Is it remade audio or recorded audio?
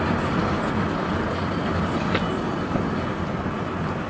recorded